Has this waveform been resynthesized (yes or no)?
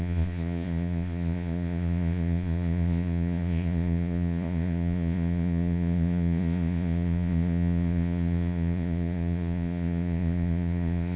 yes